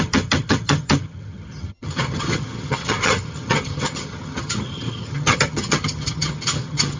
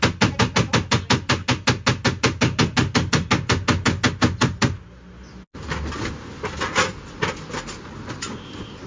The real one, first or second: second